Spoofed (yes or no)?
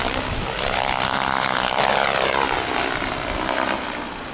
no